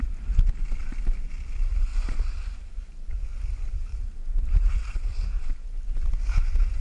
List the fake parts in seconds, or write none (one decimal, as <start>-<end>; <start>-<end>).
none